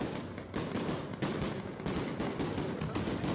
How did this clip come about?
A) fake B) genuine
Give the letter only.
B